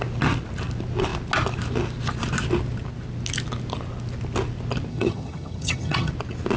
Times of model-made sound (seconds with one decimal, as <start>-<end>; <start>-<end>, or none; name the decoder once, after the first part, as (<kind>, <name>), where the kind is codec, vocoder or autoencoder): 4.9-6.1 (vocoder, HiFi-GAN)